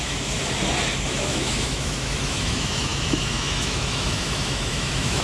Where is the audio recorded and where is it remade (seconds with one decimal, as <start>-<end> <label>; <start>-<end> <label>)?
0.0-0.4 remade; 0.4-1.1 recorded; 1.1-5.2 remade